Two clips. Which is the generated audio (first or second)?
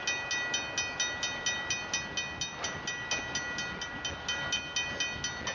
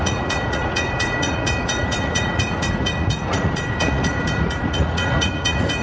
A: second